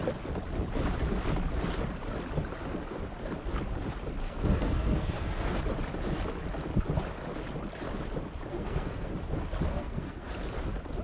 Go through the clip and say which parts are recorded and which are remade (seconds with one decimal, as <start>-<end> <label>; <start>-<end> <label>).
0.0-4.2 recorded; 4.2-5.6 remade; 5.6-8.5 recorded; 8.5-9.1 remade; 9.1-9.7 recorded; 9.7-10.3 remade; 10.3-11.0 recorded